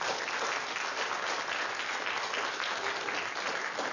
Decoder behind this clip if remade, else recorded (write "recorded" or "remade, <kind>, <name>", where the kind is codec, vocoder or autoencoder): recorded